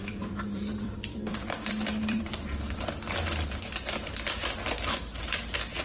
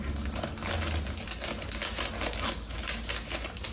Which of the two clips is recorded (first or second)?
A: second